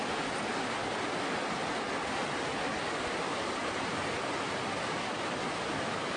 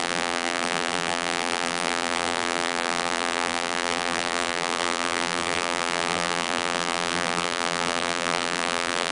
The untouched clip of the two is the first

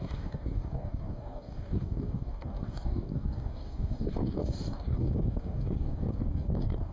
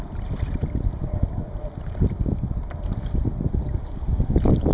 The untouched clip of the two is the second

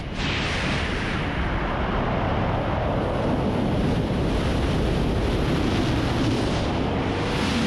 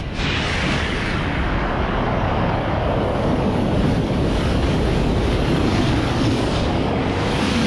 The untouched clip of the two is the first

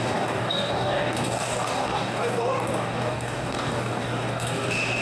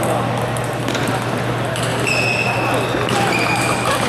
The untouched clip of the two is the second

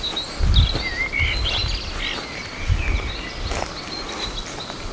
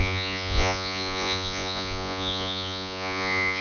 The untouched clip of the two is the first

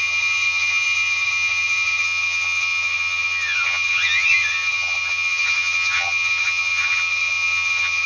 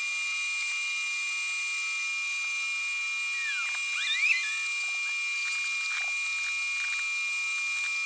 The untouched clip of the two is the second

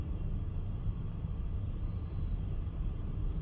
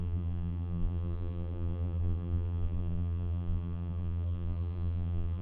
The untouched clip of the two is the first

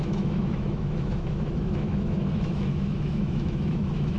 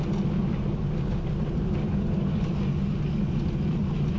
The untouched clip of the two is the second